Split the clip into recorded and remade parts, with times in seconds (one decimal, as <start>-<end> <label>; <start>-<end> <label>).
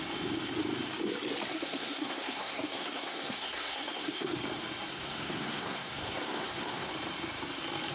0.0-1.5 recorded; 1.5-4.3 remade; 4.3-4.9 recorded; 4.9-6.9 remade; 6.9-7.9 recorded